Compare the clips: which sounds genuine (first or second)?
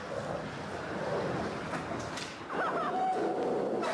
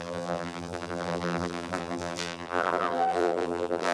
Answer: first